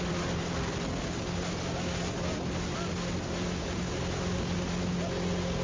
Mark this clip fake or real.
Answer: real